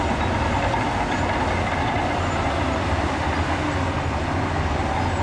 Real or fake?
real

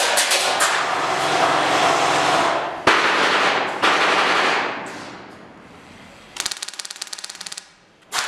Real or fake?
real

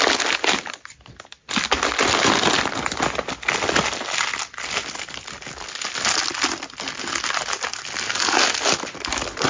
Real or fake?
real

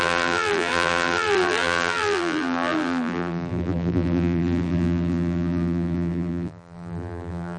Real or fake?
fake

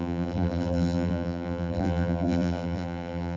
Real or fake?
fake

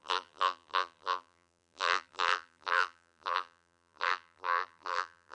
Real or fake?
fake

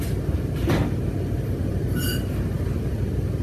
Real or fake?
fake